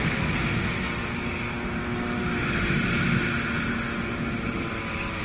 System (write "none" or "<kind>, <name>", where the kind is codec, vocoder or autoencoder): none